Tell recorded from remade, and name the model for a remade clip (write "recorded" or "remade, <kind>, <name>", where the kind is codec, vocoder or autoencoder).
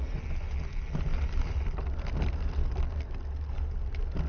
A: recorded